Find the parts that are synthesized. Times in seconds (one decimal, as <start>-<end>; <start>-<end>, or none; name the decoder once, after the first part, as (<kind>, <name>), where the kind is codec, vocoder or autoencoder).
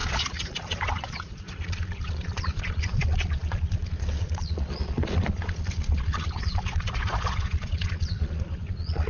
0.0-9.1 (vocoder, Vocos)